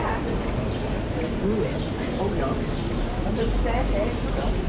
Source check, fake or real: real